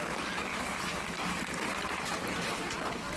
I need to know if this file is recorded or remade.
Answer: recorded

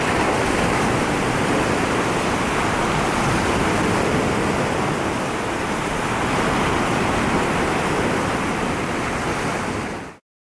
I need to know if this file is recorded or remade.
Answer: recorded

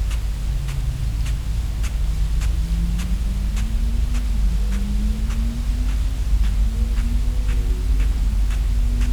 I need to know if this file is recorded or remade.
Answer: recorded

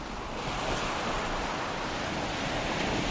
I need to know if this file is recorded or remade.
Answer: recorded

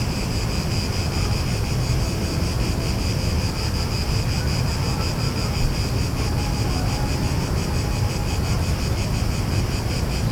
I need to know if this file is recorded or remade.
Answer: recorded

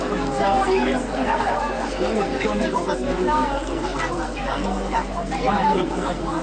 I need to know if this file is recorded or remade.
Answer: remade